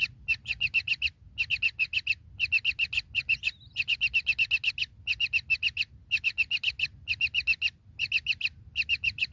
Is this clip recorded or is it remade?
recorded